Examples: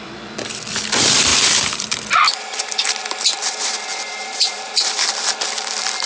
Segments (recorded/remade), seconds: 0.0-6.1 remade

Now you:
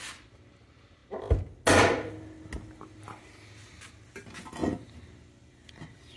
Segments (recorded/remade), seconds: 0.0-6.2 recorded

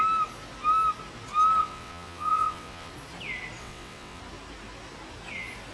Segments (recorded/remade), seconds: 0.0-1.6 recorded; 1.6-2.9 remade; 2.9-3.6 recorded; 3.6-4.2 remade; 4.2-5.7 recorded

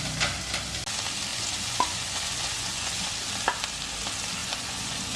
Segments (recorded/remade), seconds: 0.0-1.3 recorded; 1.3-3.1 remade; 3.1-4.4 recorded; 4.4-5.2 remade